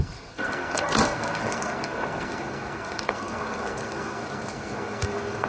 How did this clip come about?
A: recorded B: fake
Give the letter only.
B